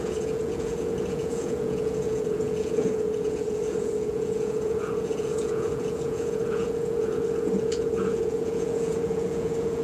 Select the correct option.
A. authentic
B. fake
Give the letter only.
B